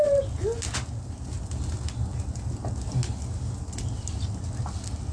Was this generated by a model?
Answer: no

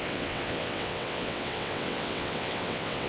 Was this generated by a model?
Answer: yes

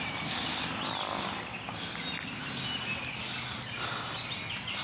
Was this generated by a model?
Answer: no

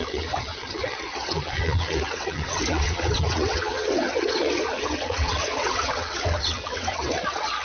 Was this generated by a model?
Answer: yes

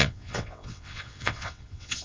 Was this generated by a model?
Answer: yes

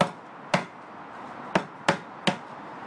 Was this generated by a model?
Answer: no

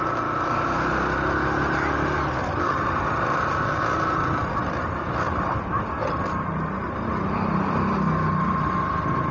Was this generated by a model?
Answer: no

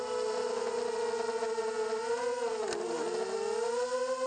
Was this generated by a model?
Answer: no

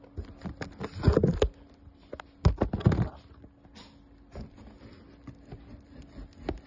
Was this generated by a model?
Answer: no